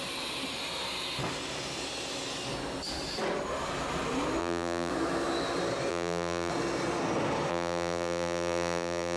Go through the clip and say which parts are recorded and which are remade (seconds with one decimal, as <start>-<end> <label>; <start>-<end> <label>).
0.0-4.4 recorded; 4.4-4.9 remade; 4.9-5.9 recorded; 5.9-6.5 remade; 6.5-7.5 recorded; 7.5-9.2 remade